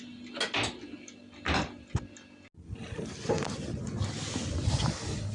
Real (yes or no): yes